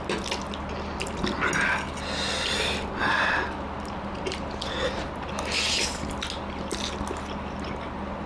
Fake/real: real